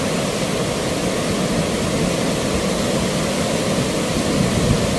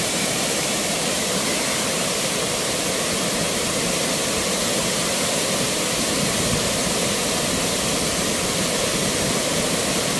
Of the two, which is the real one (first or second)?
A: first